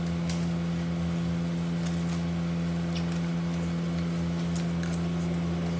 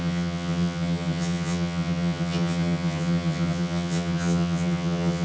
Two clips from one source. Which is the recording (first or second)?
first